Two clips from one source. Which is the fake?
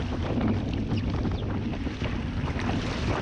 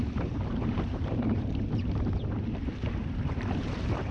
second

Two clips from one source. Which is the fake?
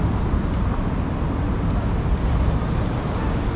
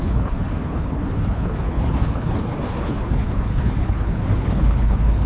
second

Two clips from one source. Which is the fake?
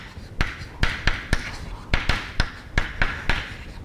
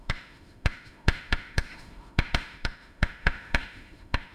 second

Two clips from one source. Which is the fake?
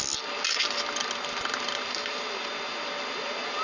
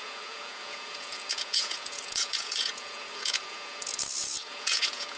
second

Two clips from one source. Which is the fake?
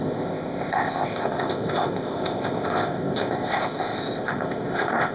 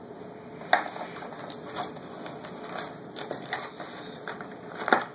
first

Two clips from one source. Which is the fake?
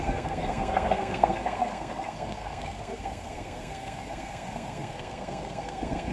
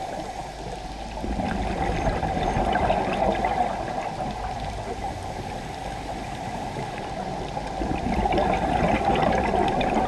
first